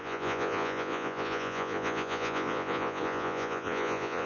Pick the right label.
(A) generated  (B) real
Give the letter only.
A